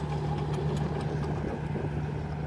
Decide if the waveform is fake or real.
real